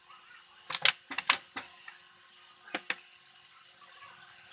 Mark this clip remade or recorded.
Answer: recorded